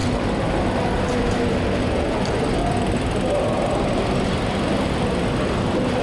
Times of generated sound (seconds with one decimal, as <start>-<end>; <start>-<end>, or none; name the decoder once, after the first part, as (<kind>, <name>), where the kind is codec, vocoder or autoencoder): 1.8-2.6 (vocoder, Vocos)